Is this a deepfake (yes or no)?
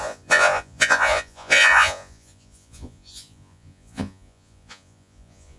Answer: yes